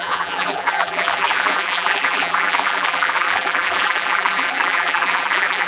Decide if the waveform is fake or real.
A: fake